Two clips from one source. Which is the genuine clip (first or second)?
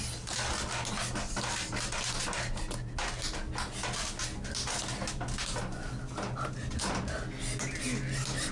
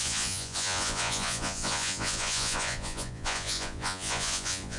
first